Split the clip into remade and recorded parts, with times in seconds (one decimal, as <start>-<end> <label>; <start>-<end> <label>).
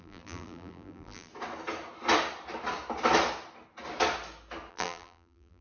0.0-1.3 remade; 1.3-4.7 recorded; 4.7-5.6 remade